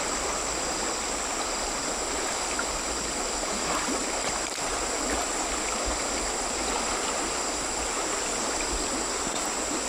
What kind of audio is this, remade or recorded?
recorded